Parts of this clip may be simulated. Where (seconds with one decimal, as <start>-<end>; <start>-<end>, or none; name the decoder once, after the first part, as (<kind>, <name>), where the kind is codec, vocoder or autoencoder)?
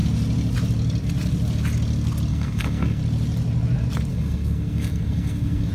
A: 2.3-3.0 (codec, SNAC); 4.1-5.7